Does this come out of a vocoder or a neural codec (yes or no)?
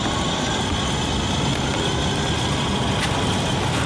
no